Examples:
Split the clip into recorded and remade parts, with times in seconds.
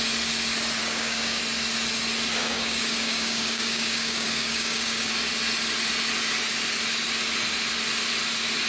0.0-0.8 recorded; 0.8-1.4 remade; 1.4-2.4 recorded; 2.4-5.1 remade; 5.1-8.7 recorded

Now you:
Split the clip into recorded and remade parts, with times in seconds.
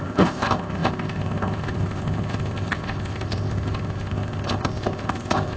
0.0-5.6 remade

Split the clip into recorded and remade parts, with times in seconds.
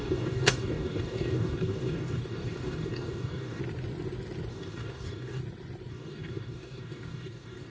0.0-3.6 remade; 3.6-4.5 recorded; 4.5-5.4 remade; 5.4-5.9 recorded; 5.9-7.7 remade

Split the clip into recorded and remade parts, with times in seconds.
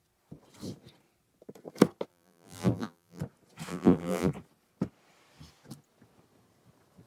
0.0-2.1 recorded; 2.1-3.2 remade; 3.2-3.7 recorded; 3.7-4.3 remade; 4.3-7.1 recorded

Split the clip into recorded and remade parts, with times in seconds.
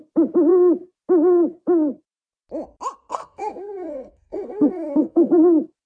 0.0-3.1 recorded; 3.1-5.4 remade; 5.4-5.9 recorded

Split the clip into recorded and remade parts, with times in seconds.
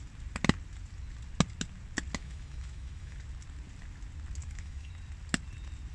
0.0-2.2 recorded; 2.2-3.2 remade; 3.2-4.4 recorded; 4.4-4.9 remade; 4.9-5.9 recorded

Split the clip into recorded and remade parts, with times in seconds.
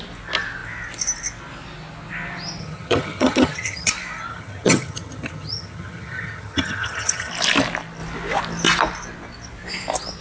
0.0-2.6 recorded; 2.6-3.9 remade; 3.9-4.3 recorded; 4.3-7.3 remade; 7.3-10.2 recorded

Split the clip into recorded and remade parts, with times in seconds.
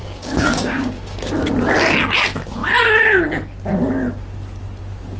0.0-1.2 remade; 1.2-5.2 recorded